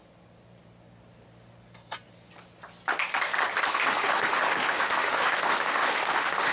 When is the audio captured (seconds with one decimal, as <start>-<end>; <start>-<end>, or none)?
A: 0.0-3.7